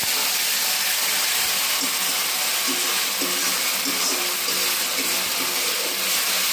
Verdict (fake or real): real